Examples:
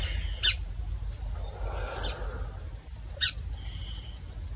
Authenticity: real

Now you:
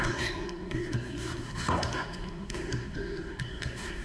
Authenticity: fake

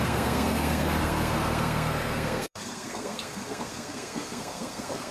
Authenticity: fake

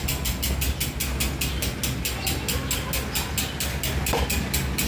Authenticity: real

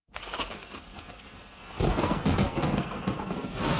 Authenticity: fake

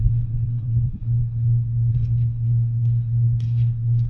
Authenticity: fake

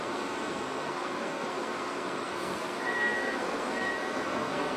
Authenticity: fake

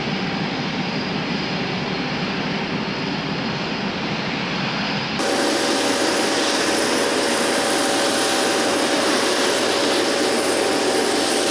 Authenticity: real